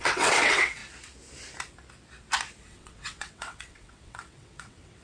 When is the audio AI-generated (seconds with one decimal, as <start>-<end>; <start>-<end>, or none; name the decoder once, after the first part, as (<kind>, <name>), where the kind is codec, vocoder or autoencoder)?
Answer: 0.0-0.8 (vocoder, WaveNeXt); 2.6-5.0